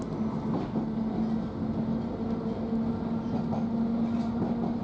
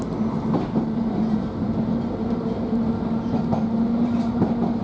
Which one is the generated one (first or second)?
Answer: second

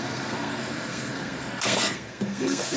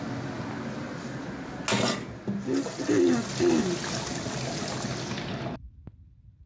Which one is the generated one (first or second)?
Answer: first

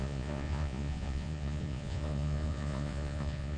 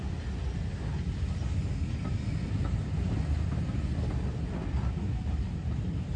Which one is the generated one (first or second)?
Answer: first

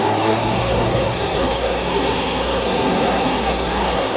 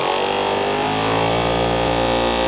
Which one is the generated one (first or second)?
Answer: first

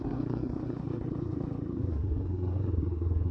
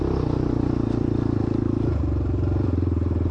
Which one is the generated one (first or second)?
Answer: first